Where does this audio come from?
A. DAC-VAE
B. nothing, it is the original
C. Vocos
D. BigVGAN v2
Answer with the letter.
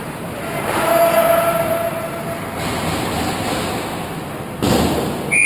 B